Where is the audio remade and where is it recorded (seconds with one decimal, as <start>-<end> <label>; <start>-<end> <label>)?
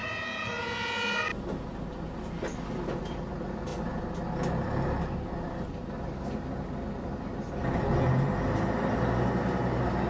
0.0-10.1 recorded